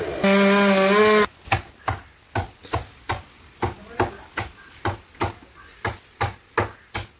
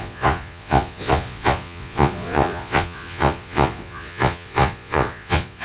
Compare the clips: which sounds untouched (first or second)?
first